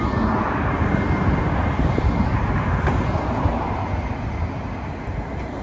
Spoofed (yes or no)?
no